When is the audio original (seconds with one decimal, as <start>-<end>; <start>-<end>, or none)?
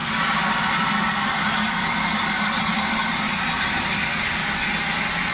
0.0-5.3